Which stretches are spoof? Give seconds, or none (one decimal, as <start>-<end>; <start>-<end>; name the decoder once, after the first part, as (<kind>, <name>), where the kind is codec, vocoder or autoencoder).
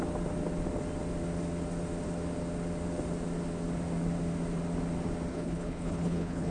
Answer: 5.3-6.5 (codec, HILCodec)